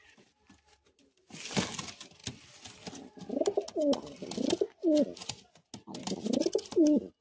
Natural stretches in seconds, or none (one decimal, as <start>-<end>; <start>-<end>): 0.0-7.2